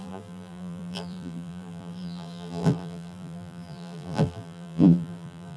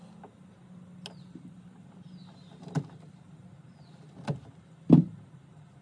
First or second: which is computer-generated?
first